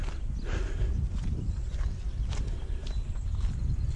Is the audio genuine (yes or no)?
yes